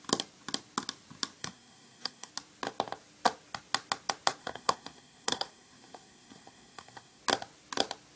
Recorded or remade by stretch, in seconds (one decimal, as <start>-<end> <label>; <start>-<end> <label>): 0.0-1.4 recorded; 1.4-2.3 remade; 2.3-4.4 recorded; 4.4-7.2 remade; 7.2-8.2 recorded